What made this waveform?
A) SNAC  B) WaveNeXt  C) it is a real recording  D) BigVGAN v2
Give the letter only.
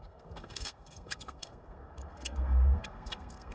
A